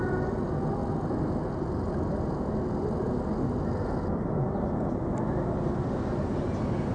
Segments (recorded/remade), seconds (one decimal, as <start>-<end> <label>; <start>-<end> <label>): 0.0-6.9 recorded